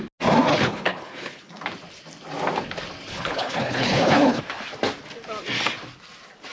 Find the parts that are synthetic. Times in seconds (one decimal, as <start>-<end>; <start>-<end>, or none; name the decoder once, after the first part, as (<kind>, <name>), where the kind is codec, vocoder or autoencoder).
0.5-1.5 (codec, HILCodec); 3.1-4.4